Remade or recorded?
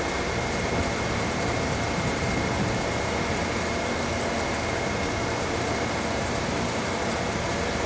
remade